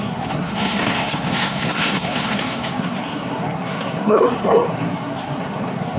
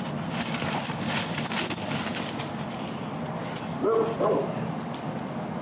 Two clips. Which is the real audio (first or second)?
second